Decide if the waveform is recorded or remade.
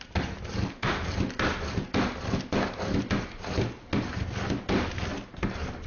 recorded